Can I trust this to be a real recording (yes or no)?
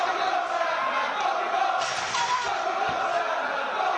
yes